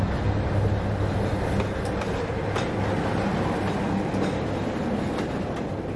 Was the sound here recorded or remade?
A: recorded